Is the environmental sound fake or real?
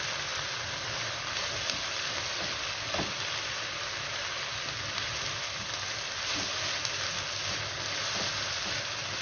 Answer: real